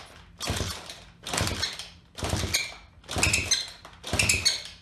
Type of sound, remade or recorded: recorded